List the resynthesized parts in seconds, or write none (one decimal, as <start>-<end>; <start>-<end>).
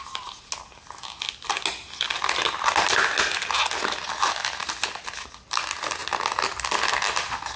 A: none